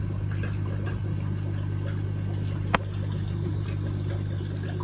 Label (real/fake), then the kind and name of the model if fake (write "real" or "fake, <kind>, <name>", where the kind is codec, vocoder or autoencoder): real